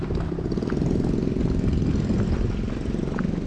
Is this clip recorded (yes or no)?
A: yes